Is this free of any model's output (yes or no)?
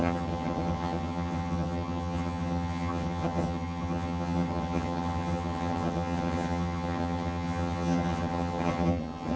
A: no